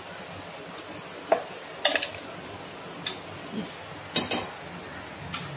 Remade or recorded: recorded